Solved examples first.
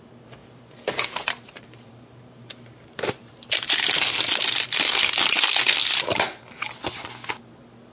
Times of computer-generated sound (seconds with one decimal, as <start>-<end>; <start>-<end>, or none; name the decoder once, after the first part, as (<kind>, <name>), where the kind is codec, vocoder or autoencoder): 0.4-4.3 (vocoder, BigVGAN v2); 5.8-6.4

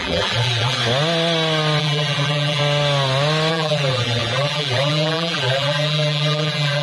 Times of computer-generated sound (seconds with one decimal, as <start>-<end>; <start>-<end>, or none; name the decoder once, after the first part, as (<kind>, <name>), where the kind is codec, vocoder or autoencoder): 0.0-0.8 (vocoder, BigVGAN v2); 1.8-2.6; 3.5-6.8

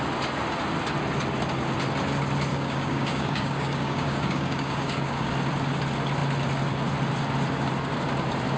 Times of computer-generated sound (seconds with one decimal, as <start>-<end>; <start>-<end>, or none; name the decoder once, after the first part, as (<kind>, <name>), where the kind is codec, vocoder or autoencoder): 2.5-5.3 (codec, DAC)